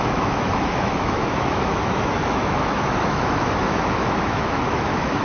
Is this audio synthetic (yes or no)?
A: yes